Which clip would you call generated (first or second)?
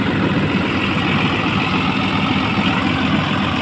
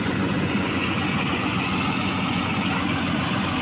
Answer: second